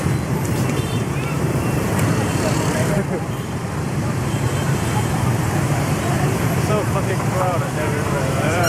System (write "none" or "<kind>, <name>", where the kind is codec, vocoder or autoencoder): vocoder, BigVGAN v2